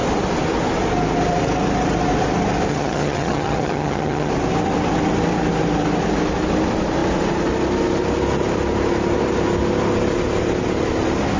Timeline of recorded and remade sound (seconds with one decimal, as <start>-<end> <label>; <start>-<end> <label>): 0.0-2.7 recorded; 2.7-4.3 remade; 4.3-11.4 recorded